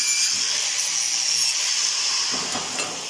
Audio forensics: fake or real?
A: real